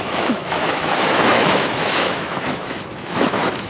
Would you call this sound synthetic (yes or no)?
yes